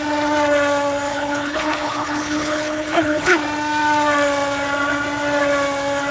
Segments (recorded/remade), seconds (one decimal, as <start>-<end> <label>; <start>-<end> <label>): 0.0-1.1 recorded; 1.1-3.4 remade; 3.4-6.1 recorded